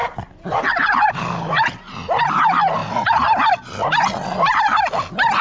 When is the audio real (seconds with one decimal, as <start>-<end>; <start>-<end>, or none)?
0.0-5.4